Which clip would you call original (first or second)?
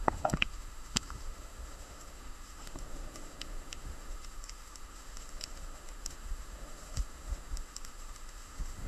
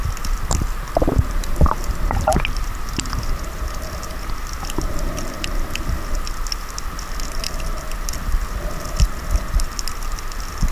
second